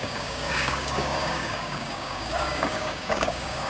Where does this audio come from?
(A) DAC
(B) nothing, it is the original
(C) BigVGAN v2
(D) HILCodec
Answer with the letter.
A